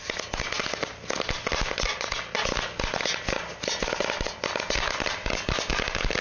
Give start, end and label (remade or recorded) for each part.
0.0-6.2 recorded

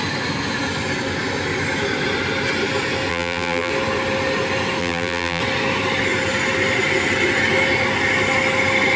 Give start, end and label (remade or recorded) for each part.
0.0-3.1 recorded; 3.1-3.7 remade; 3.7-4.8 recorded; 4.8-5.4 remade; 5.4-9.0 recorded